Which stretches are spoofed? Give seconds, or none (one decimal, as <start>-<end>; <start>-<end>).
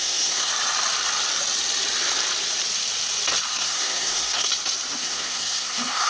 0.0-0.5; 3.5-4.5; 5.0-6.1